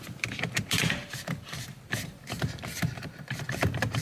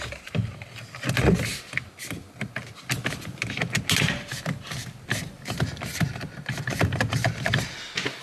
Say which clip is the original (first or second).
second